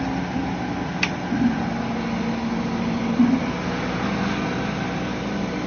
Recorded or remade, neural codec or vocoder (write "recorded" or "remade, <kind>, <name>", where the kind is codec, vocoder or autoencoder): recorded